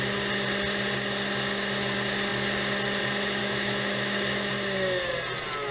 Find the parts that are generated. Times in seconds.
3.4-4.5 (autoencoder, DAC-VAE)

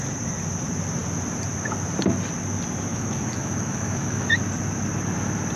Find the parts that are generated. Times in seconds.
2.9-4.4 (autoencoder, DAC-VAE)

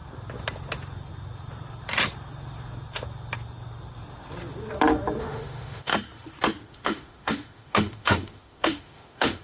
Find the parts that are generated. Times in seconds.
5.2-5.9 (autoencoder, DAC-VAE); 6.6-9.4

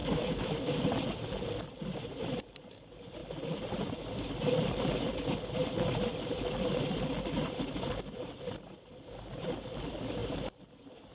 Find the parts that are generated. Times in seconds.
0.0-0.6 (autoencoder, DAC-VAE)

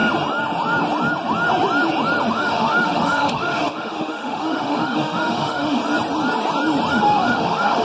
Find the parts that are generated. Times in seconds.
2.3-5.8 (autoencoder, DAC-VAE); 6.9-7.8